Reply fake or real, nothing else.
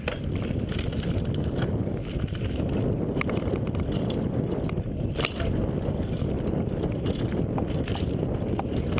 real